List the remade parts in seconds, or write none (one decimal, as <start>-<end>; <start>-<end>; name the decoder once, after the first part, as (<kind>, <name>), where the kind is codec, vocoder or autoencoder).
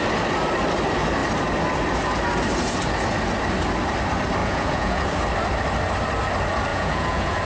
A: 4.4-5.0 (vocoder, Vocos); 6.7-7.4